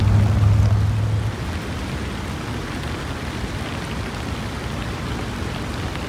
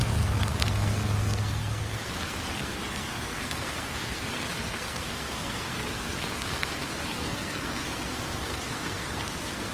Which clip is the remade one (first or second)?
second